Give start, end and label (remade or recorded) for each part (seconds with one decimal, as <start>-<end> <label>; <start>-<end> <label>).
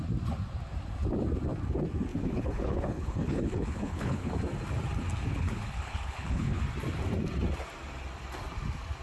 0.0-2.1 recorded; 2.1-4.3 remade; 4.3-5.3 recorded; 5.3-6.6 remade; 6.6-9.0 recorded